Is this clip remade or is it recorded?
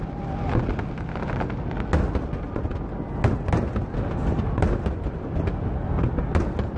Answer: recorded